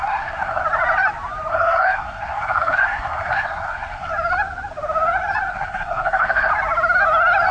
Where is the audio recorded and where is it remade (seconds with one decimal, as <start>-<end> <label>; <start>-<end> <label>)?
0.0-0.6 remade; 0.6-1.5 recorded; 1.5-4.1 remade; 4.1-5.5 recorded; 5.5-6.5 remade; 6.5-7.5 recorded

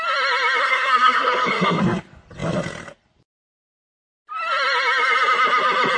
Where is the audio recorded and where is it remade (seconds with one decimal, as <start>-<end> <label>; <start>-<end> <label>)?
0.0-0.6 recorded; 0.6-1.8 remade; 1.8-6.0 recorded

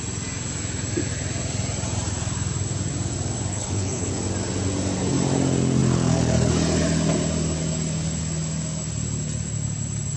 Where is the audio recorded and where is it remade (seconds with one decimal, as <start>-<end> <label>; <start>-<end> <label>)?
0.0-3.5 recorded; 3.5-4.1 remade; 4.1-10.2 recorded

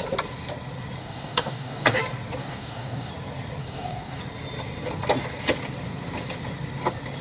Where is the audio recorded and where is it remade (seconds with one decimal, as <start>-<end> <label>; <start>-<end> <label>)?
0.0-1.0 recorded; 1.0-2.0 remade; 2.0-2.4 recorded; 2.4-3.1 remade; 3.1-3.6 recorded; 3.6-4.2 remade; 4.2-7.2 recorded

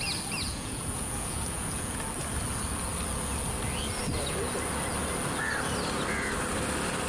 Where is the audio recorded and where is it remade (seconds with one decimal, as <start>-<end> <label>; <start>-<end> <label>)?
0.0-0.5 recorded; 0.5-2.0 remade; 2.0-7.1 recorded

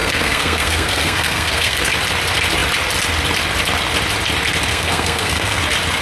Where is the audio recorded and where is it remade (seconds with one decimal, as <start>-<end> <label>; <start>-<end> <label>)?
0.0-1.9 remade; 1.9-4.7 recorded; 4.7-5.6 remade; 5.6-6.0 recorded

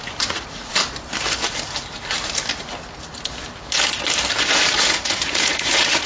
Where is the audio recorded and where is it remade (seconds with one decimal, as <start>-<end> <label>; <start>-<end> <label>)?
0.0-0.7 remade; 0.7-4.4 recorded; 4.4-6.1 remade

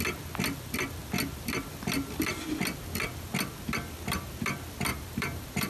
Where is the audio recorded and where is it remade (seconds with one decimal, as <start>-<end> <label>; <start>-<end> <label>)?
0.0-4.9 recorded; 4.9-5.7 remade